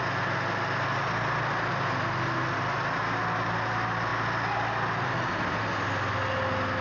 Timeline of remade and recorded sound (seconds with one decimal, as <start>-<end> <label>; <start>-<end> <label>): 0.0-6.8 recorded

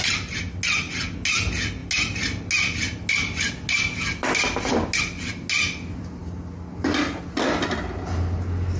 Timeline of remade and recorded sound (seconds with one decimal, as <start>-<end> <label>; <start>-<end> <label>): 0.0-8.8 recorded

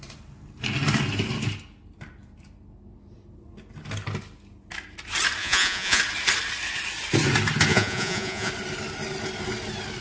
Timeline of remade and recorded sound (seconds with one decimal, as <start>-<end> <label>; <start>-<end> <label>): 0.0-5.4 recorded; 5.4-6.0 remade; 6.0-7.7 recorded; 7.7-8.5 remade; 8.5-10.0 recorded